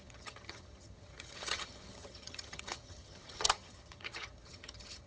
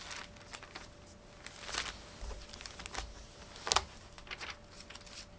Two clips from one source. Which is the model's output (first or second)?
first